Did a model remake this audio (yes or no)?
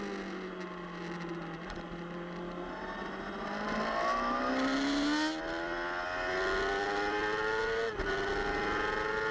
no